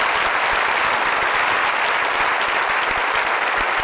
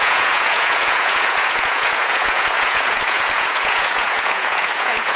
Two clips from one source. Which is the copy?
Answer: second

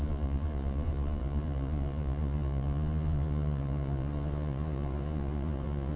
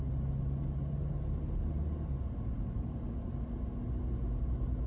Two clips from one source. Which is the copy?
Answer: first